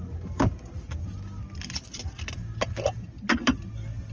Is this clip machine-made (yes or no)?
no